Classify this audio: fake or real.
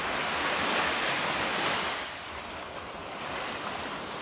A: real